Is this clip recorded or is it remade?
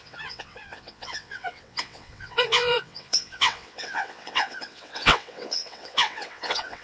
remade